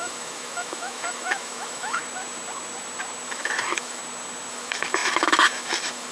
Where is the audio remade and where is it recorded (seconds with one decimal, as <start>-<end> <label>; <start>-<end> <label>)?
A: 0.0-2.0 remade; 2.0-3.3 recorded; 3.3-4.0 remade; 4.0-4.5 recorded; 4.5-6.1 remade